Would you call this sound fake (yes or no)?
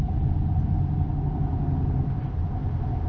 no